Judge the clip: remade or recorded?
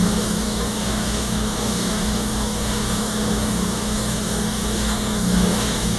remade